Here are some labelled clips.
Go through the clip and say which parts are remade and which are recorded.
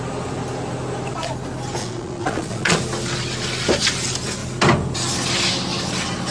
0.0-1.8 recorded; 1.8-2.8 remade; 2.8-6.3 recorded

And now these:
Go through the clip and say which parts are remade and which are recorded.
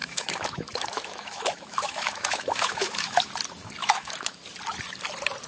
0.0-3.3 remade; 3.3-3.8 recorded; 3.8-4.4 remade; 4.4-5.5 recorded